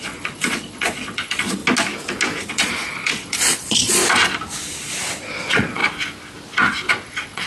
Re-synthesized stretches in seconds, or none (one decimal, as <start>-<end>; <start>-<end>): 0.0-1.6; 2.5-4.0; 5.2-5.8; 6.9-7.5